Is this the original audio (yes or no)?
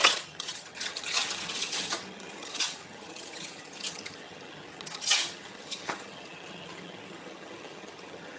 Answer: no